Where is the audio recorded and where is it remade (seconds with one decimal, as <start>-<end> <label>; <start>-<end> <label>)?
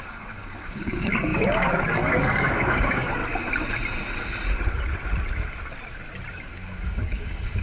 0.0-3.2 remade; 3.2-6.3 recorded; 6.3-7.6 remade